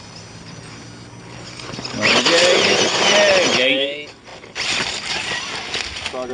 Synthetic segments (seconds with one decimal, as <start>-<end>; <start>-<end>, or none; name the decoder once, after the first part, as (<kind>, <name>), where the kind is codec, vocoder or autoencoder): none